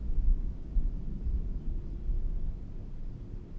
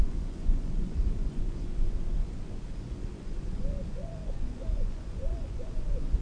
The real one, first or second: first